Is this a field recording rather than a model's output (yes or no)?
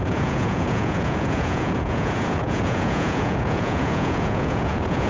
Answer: no